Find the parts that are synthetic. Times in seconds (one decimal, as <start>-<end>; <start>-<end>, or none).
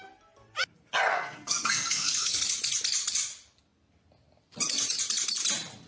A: 1.1-2.4